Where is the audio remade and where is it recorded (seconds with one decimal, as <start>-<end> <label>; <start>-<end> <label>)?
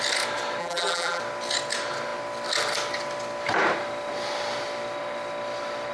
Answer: 0.0-0.6 recorded; 0.6-1.2 remade; 1.2-5.9 recorded